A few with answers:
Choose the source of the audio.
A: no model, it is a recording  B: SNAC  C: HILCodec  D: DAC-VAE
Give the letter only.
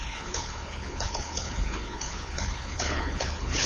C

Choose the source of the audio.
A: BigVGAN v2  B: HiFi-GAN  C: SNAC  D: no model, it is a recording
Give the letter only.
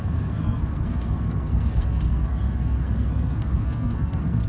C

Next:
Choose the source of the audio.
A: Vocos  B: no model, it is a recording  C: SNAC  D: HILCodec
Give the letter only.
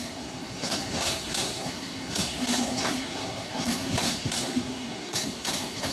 C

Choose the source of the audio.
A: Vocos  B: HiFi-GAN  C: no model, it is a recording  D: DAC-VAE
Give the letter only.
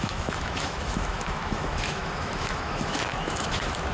D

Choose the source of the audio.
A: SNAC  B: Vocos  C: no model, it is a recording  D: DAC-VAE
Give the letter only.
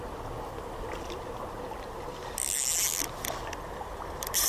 C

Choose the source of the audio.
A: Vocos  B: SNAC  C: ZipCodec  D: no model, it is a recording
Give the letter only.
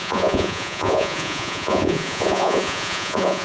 A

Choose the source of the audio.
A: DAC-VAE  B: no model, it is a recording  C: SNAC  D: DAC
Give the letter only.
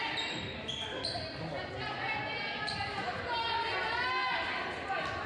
B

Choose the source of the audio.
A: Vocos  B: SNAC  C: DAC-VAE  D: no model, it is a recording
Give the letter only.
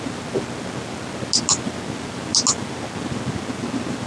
D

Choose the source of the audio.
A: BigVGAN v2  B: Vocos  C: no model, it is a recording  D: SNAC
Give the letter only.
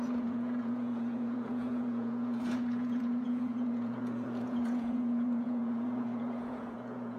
B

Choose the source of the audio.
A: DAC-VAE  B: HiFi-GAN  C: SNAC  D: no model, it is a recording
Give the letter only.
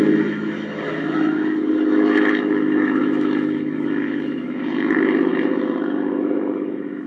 A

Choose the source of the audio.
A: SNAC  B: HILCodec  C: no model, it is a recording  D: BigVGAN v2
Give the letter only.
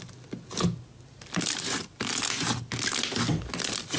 C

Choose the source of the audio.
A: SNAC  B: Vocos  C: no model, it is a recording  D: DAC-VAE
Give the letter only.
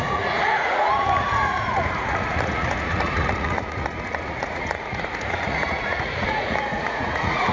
B